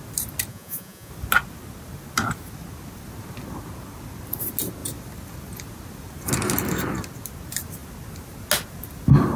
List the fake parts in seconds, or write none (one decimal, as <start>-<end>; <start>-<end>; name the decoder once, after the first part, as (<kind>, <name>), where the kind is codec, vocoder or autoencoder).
0.5-1.1 (vocoder, Vocos)